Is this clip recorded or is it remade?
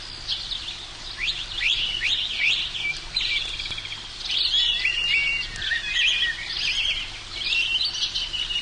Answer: recorded